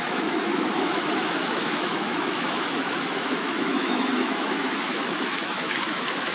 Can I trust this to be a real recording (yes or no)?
no